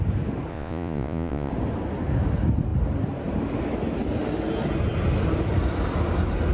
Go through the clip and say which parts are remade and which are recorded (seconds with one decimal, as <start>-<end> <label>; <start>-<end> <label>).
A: 0.0-0.5 recorded; 0.5-1.5 remade; 1.5-6.5 recorded

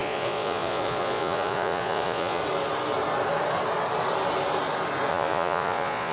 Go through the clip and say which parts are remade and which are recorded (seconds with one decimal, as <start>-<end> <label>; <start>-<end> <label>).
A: 0.0-2.4 remade; 2.4-5.1 recorded; 5.1-6.1 remade

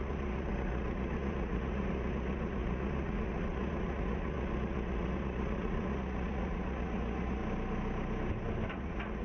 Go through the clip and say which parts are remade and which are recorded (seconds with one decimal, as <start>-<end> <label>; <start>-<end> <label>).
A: 0.0-7.4 remade; 7.4-8.7 recorded; 8.7-9.2 remade

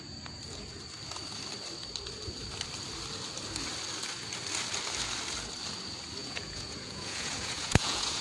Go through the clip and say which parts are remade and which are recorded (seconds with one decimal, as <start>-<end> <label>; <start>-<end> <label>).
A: 0.0-6.2 recorded; 6.2-8.2 remade

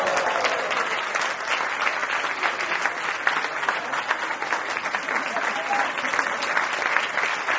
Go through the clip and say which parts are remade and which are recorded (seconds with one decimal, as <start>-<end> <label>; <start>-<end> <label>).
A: 0.0-7.6 recorded